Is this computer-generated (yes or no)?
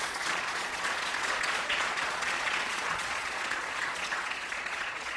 yes